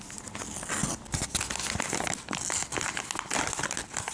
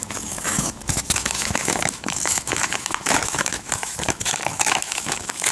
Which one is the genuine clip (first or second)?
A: first